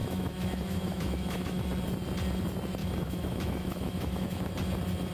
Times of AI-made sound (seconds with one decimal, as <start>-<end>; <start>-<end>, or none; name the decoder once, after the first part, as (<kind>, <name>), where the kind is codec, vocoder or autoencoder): 0.0-1.6 (autoencoder, DAC-VAE); 2.8-4.5